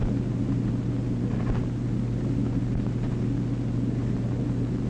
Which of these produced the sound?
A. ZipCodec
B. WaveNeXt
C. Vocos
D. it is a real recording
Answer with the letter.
D